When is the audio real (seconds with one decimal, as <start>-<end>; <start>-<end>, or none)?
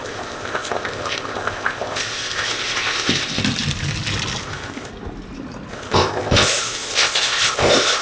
3.4-4.4; 4.9-5.7